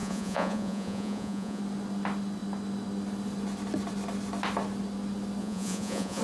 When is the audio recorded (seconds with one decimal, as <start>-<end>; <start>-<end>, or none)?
1.6-5.4